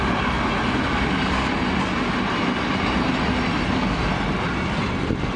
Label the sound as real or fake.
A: real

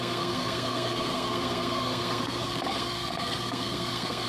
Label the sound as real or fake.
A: fake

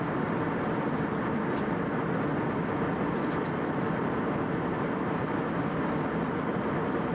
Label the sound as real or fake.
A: real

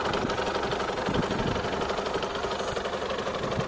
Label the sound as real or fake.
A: real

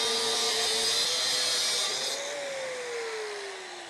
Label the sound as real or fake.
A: real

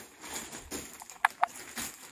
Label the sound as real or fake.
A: real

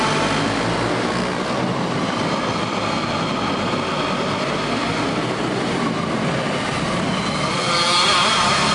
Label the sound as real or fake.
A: real